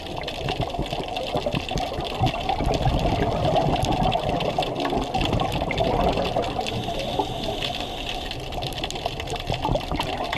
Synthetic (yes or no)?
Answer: no